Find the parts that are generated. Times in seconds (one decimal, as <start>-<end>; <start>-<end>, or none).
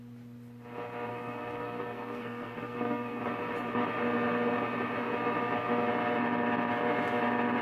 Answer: 1.1-3.2